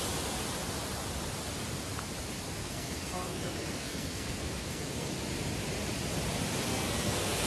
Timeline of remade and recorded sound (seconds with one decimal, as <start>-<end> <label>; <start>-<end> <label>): 0.0-2.6 recorded; 2.6-5.1 remade; 5.1-6.7 recorded; 6.7-7.5 remade